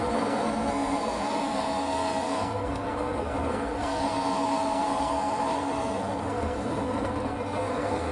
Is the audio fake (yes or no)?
yes